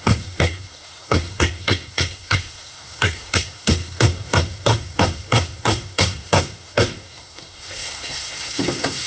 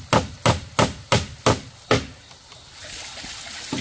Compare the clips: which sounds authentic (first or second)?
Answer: second